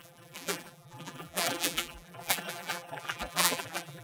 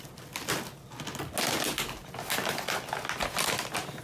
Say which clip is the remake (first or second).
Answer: first